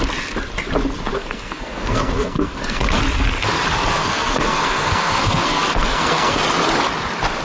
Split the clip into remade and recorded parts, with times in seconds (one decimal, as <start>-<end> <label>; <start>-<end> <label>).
0.0-1.1 recorded; 1.1-3.0 remade; 3.0-3.9 recorded; 3.9-6.4 remade; 6.4-7.4 recorded